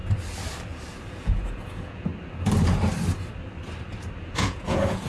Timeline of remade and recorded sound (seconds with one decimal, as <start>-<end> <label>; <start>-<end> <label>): 0.0-1.1 recorded; 1.1-2.1 remade; 2.1-4.2 recorded; 4.2-5.1 remade